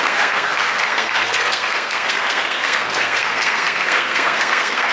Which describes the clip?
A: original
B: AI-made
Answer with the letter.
B